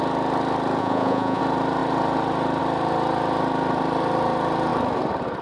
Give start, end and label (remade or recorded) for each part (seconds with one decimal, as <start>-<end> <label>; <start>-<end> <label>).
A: 0.0-0.8 recorded; 0.8-1.4 remade; 1.4-5.4 recorded